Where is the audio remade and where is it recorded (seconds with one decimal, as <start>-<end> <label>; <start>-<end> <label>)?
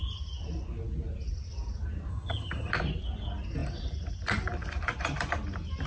0.0-2.1 recorded; 2.1-2.7 remade; 2.7-5.9 recorded